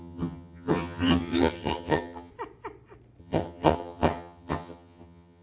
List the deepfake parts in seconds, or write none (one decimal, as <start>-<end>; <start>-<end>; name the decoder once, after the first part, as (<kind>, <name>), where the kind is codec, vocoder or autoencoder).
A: 0.0-2.3 (vocoder, HiFi-GAN); 3.2-5.4